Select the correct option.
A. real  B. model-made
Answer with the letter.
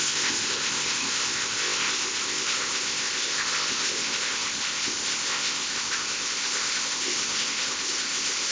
B